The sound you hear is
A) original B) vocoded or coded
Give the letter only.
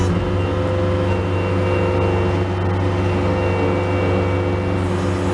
A